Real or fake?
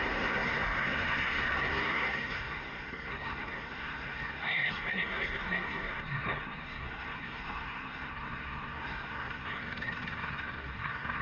fake